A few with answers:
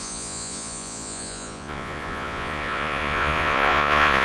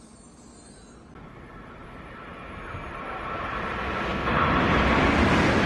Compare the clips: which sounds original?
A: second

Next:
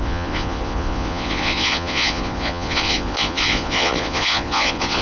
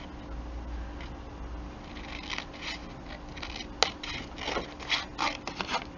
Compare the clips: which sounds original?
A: second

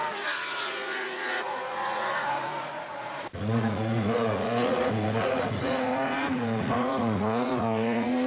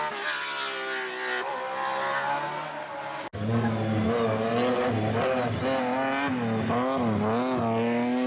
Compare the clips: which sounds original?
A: second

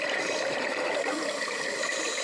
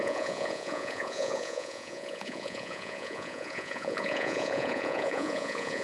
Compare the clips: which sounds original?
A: first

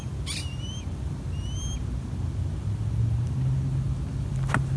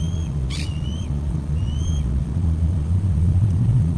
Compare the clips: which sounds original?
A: first